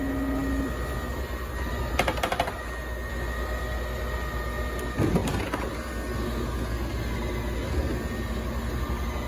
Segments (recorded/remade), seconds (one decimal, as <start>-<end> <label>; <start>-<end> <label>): 0.0-9.3 recorded